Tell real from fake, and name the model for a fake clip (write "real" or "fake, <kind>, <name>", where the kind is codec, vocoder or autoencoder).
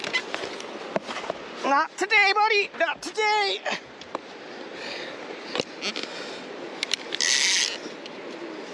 real